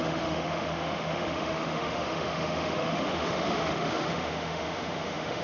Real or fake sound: fake